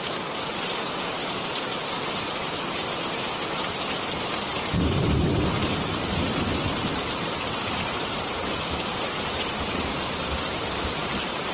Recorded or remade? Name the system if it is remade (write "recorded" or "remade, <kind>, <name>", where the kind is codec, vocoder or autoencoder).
remade, vocoder, BigVGAN v2